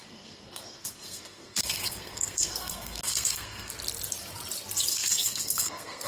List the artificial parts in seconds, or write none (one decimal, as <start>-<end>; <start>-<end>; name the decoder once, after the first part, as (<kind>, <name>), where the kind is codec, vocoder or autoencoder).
0.0-3.7 (codec, SNAC); 4.9-6.1